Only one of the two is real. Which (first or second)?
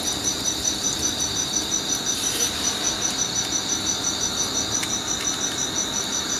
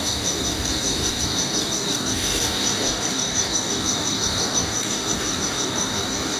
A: first